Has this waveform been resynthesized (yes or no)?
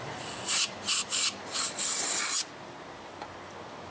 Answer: no